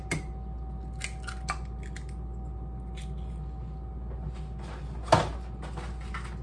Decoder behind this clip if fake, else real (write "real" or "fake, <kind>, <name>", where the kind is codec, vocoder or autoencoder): real